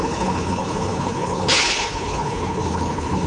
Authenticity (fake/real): fake